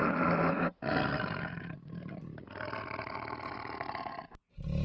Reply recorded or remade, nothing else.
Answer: recorded